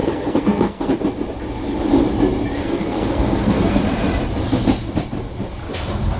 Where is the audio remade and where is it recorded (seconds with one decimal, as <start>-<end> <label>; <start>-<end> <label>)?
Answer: 0.0-1.0 remade; 1.0-2.6 recorded; 2.6-3.8 remade; 3.8-6.2 recorded